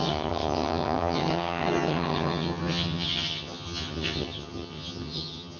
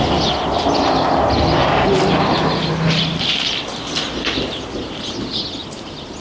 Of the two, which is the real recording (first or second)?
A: second